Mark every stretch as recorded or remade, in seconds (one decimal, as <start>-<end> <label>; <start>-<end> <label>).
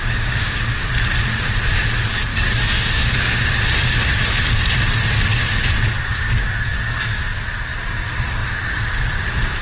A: 0.0-0.8 remade; 0.8-2.3 recorded; 2.3-3.6 remade; 3.6-9.6 recorded